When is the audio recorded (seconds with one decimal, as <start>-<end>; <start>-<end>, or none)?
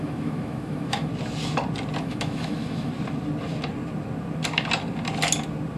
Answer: 1.1-2.0; 2.9-5.8